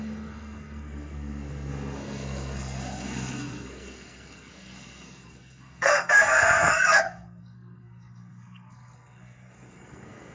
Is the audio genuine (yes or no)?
no